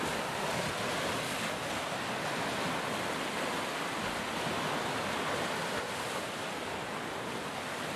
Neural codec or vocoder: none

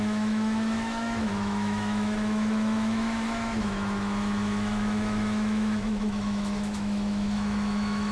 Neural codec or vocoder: autoencoder, DAC-VAE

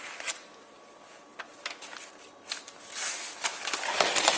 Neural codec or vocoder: none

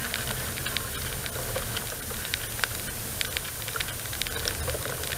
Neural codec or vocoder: none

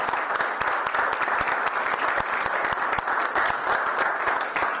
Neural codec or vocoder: none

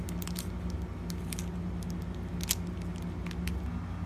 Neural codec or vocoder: none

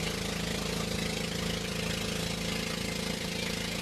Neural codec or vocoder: none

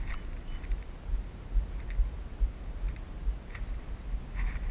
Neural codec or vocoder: none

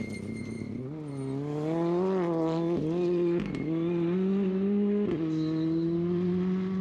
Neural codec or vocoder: none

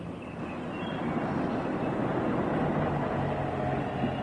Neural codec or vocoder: none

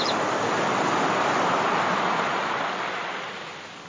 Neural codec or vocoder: none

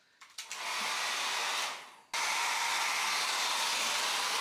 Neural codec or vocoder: none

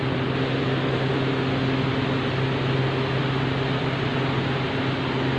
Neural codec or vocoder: none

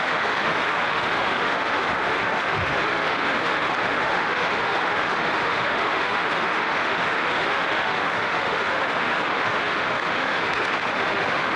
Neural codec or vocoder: autoencoder, DAC-VAE